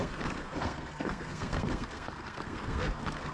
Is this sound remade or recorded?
remade